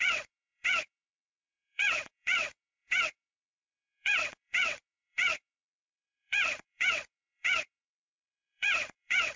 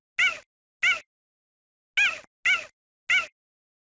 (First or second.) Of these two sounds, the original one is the second